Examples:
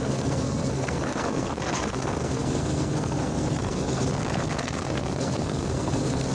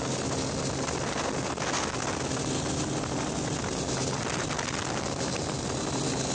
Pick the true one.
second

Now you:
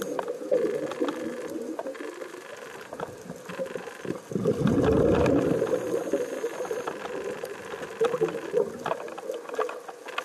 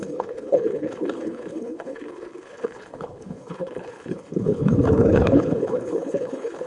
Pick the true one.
first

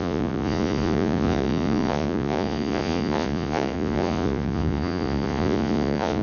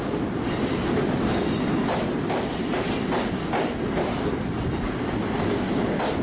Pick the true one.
second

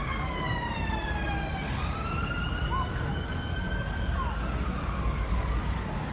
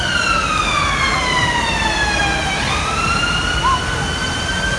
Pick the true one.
second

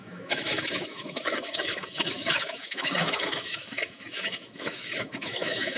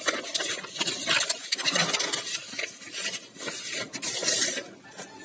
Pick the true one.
second